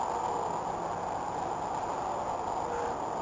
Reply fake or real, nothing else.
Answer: real